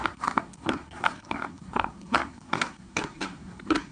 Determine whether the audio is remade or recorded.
remade